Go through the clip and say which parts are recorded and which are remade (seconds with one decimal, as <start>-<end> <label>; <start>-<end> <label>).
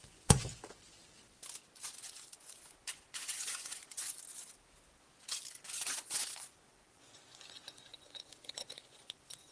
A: 0.0-0.4 remade; 0.4-1.8 recorded; 1.8-4.1 remade; 4.1-5.8 recorded; 5.8-9.5 remade